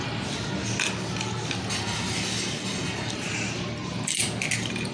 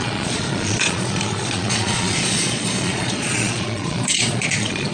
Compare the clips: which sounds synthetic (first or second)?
second